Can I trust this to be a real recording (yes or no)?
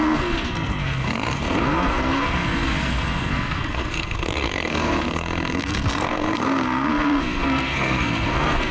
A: no